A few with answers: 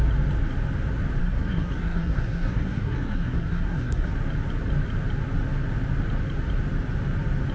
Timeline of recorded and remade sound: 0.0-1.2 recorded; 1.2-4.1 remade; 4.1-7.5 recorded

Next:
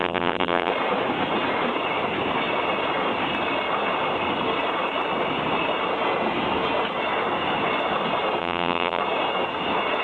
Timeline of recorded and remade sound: 0.0-0.7 remade; 0.7-8.4 recorded; 8.4-9.0 remade; 9.0-10.0 recorded

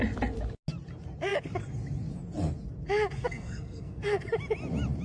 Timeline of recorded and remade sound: 0.0-3.2 recorded; 3.2-4.2 remade; 4.2-5.0 recorded

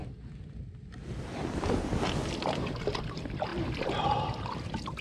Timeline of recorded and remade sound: 0.0-5.0 recorded

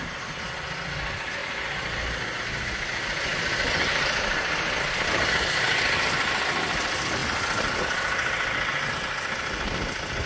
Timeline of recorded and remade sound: 0.0-10.3 recorded